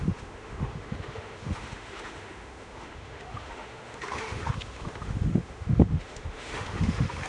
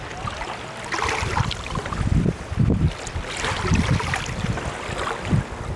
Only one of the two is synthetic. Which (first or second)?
first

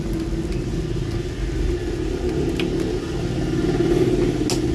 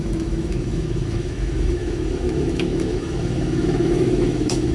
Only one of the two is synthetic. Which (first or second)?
second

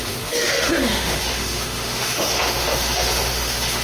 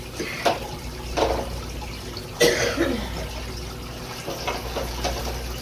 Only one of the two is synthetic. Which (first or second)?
first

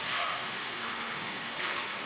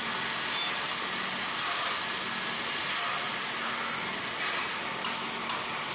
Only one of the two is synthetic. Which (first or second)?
first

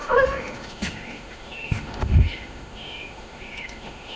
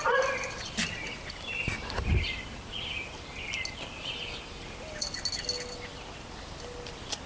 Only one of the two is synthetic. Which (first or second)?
first